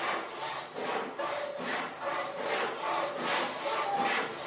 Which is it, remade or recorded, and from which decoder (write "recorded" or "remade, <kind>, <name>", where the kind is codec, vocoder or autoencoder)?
recorded